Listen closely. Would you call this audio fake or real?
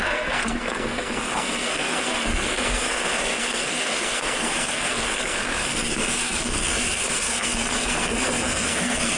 fake